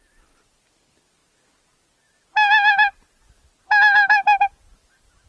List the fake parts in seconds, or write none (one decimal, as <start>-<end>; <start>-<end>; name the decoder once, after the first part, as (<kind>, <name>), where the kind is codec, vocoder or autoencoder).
none